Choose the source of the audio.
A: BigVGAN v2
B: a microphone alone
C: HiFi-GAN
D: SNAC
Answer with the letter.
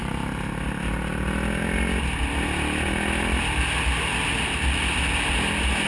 B